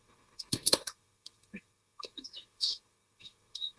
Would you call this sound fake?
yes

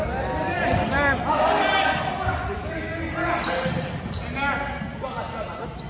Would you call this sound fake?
no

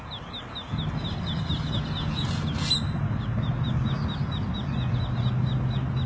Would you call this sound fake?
no